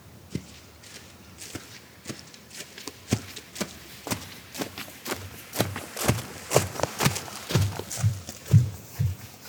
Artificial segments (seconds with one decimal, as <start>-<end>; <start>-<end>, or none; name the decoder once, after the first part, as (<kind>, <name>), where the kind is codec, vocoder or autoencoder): 8.4-9.5 (vocoder, Vocos)